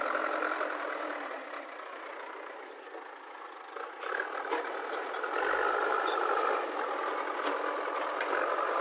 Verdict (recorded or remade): recorded